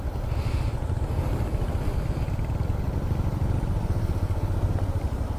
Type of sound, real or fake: real